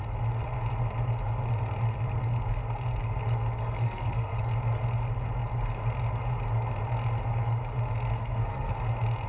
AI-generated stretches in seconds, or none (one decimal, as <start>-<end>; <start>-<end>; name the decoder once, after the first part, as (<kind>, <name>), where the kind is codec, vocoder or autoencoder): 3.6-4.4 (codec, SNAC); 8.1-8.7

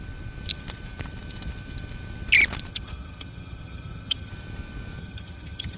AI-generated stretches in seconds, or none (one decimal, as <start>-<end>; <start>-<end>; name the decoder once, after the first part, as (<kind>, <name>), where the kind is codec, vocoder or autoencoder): 2.7-4.3 (vocoder, HiFi-GAN); 5.0-5.8

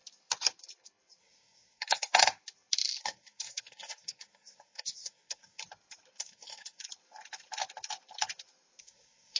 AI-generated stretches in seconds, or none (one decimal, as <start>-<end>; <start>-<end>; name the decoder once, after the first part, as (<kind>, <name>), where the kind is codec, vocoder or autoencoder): 1.2-2.2 (codec, SNAC); 3.0-5.6; 6.2-6.8; 8.8-9.4